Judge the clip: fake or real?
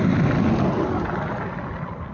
real